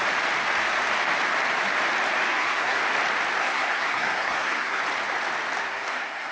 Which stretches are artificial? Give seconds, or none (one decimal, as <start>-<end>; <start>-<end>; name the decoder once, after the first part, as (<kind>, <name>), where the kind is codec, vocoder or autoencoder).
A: 2.3-2.8 (codec, SNAC); 3.4-4.8; 5.6-6.3